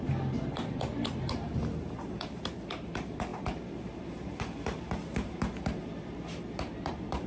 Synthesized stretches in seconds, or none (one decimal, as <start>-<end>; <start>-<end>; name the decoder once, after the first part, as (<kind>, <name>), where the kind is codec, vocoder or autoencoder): 0.0-7.3 (vocoder, BigVGAN v2)